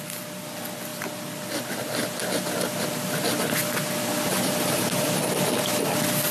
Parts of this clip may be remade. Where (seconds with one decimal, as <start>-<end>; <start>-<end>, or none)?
none